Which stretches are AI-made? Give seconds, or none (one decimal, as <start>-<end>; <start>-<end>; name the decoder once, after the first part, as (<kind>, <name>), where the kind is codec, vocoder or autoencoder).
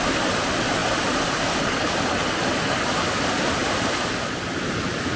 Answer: 0.0-0.8 (vocoder, BigVGAN v2); 1.9-5.2